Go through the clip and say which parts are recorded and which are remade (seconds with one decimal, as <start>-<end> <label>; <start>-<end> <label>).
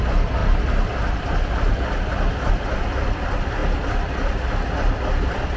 0.0-0.4 remade; 0.4-2.5 recorded; 2.5-3.6 remade; 3.6-5.1 recorded; 5.1-5.6 remade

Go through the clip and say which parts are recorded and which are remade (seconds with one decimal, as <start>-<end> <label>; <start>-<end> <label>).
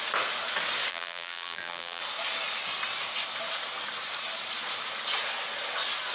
0.0-0.9 recorded; 0.9-2.0 remade; 2.0-6.1 recorded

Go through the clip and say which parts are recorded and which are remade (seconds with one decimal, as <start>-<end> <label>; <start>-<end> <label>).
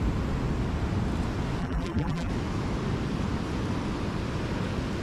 0.0-1.6 recorded; 1.6-2.3 remade; 2.3-5.0 recorded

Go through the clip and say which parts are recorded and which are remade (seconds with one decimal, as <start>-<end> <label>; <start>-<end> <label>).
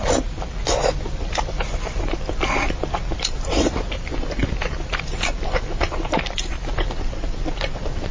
0.0-2.0 remade; 2.0-4.4 recorded; 4.4-7.1 remade; 7.1-8.1 recorded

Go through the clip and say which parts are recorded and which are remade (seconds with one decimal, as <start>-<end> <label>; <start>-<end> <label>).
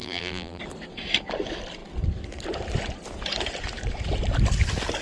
0.0-0.6 remade; 0.6-5.0 recorded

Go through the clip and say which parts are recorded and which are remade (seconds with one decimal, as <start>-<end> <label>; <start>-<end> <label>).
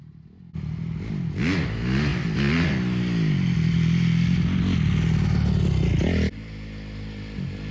0.0-7.7 recorded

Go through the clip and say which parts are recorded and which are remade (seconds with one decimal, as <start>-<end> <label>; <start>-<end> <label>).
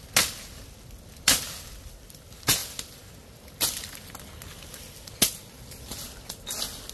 0.0-6.9 recorded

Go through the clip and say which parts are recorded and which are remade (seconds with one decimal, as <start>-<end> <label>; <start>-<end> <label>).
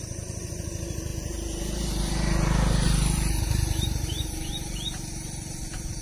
0.0-6.0 remade